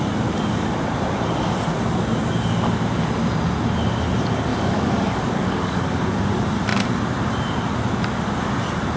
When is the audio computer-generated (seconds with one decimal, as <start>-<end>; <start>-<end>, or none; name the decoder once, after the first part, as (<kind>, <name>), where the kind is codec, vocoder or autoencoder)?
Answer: 4.5-6.2 (codec, DAC)